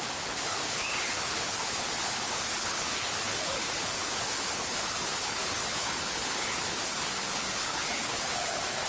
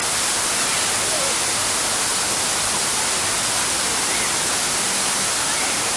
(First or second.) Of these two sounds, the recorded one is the second